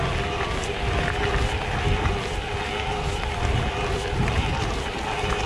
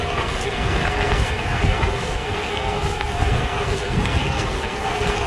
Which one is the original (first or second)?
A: first